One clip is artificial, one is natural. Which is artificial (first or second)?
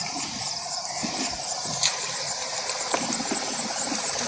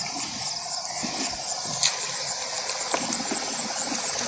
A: first